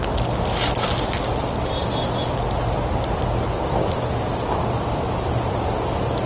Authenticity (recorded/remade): recorded